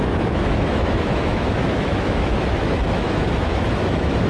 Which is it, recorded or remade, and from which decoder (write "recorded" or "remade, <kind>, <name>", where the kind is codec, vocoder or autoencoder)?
remade, autoencoder, DAC-VAE